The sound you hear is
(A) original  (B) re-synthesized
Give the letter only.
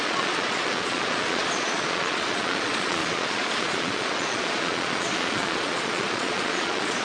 B